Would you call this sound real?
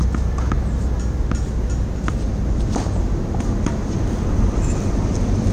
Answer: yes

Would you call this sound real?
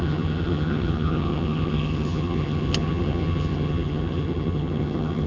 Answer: no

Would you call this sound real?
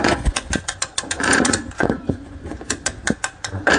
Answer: no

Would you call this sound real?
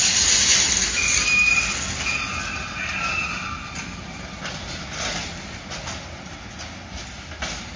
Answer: yes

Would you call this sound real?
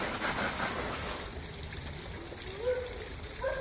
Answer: yes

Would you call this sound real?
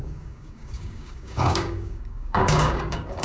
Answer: no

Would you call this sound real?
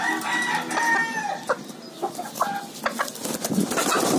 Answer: yes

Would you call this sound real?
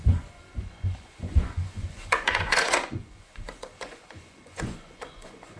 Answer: no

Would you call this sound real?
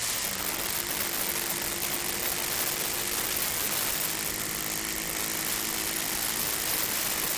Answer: yes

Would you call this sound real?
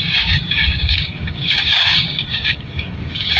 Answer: no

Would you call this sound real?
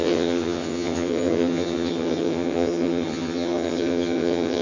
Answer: no